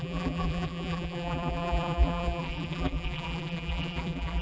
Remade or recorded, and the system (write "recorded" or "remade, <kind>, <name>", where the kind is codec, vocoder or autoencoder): remade, vocoder, BigVGAN v2